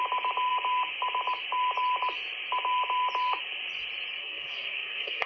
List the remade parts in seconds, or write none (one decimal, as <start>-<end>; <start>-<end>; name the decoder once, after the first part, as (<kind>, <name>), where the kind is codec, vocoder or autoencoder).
4.2-5.3 (codec, SNAC)